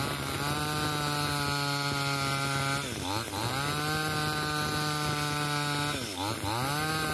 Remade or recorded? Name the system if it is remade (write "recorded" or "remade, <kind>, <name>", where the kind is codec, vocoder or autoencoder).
recorded